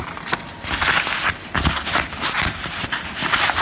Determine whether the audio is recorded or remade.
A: recorded